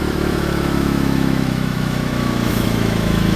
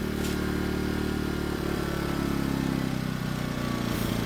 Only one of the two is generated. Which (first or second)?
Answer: first